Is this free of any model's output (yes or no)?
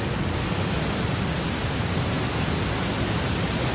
yes